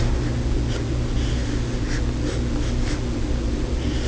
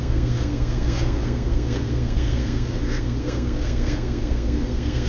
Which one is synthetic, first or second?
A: second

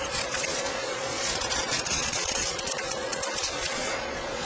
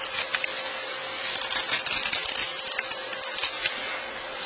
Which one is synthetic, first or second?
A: first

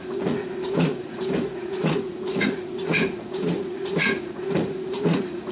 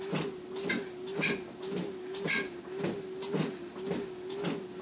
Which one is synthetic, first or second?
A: first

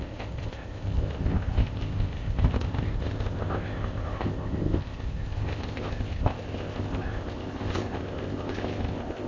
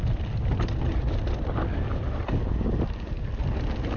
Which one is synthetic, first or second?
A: first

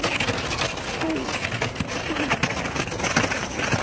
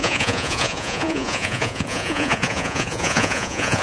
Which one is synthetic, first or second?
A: second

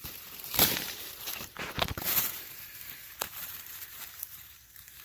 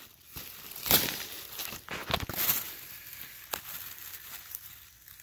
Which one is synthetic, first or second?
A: first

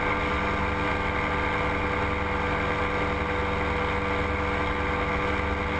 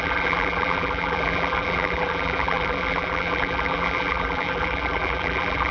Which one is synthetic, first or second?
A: second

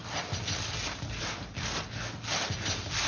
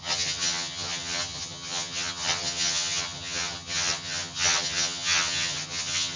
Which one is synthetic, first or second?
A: second